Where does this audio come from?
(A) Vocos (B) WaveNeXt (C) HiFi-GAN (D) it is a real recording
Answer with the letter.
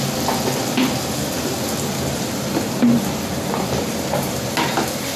D